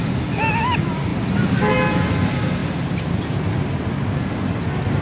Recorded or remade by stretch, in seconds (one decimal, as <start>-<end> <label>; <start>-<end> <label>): 0.0-5.0 recorded